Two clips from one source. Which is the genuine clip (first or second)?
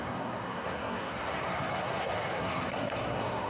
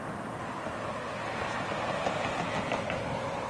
second